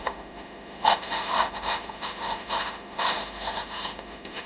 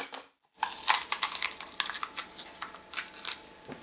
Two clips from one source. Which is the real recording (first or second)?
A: second